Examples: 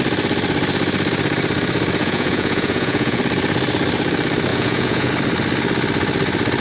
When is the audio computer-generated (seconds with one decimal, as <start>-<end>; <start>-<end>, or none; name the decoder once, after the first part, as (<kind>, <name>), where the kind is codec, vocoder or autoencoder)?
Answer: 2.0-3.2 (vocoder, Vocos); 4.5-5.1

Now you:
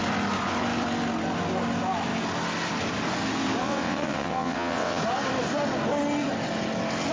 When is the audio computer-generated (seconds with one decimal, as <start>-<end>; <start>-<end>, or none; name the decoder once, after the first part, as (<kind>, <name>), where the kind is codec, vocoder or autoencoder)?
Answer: 3.6-5.0 (vocoder, WaveNeXt)

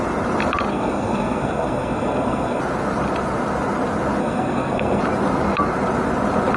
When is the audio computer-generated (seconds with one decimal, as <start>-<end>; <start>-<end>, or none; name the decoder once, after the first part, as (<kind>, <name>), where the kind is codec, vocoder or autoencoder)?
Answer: 0.7-2.6 (codec, SNAC); 4.2-5.0

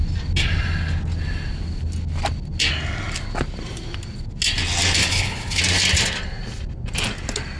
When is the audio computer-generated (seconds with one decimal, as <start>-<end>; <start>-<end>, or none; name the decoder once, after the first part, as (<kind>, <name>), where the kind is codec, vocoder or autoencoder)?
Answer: 5.0-5.6 (codec, HILCodec)

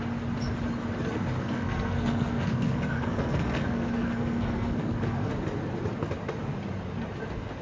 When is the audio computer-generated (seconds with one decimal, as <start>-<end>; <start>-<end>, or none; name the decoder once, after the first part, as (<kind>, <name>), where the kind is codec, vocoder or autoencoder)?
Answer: 1.4-5.3 (codec, SNAC)

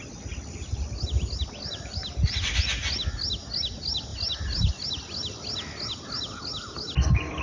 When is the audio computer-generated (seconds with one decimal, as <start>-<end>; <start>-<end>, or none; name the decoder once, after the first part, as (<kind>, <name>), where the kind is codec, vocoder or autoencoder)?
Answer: none

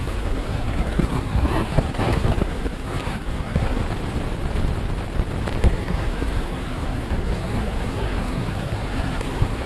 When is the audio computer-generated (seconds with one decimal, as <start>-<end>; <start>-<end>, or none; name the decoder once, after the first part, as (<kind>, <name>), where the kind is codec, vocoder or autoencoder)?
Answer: 0.0-3.8 (codec, SNAC); 5.6-9.7

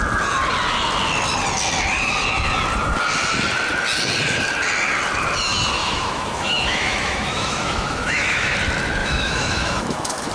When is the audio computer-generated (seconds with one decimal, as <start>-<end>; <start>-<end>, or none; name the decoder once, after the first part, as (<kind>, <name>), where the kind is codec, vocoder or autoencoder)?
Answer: 5.8-8.5 (autoencoder, DAC-VAE); 9.0-10.3